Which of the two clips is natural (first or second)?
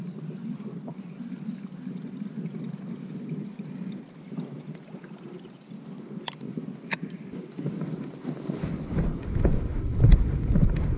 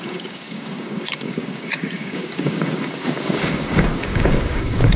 first